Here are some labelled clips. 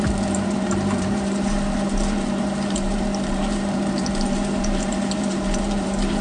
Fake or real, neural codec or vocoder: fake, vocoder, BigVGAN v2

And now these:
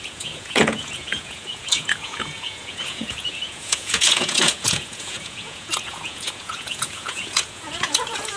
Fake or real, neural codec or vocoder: fake, vocoder, Vocos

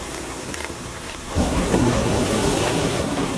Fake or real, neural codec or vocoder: fake, codec, SNAC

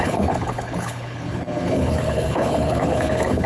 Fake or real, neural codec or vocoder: fake, codec, HILCodec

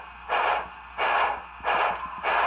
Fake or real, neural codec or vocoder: real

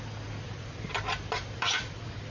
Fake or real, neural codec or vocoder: real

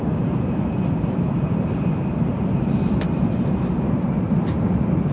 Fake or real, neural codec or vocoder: fake, vocoder, BigVGAN v2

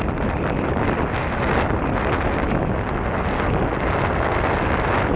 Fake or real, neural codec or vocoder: real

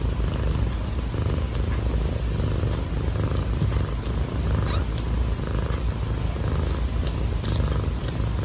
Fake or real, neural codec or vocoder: real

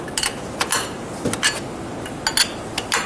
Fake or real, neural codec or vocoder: real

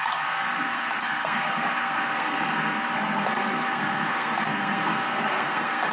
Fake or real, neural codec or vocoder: fake, codec, SNAC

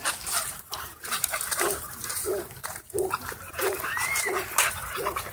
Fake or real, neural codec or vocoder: fake, vocoder, BigVGAN v2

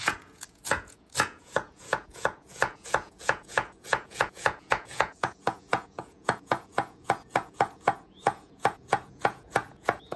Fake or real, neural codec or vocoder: fake, vocoder, Vocos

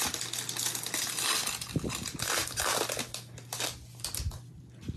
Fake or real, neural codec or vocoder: real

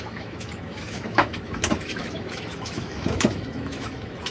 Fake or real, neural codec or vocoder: fake, autoencoder, DAC-VAE